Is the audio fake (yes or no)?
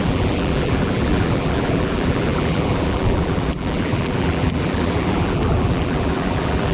yes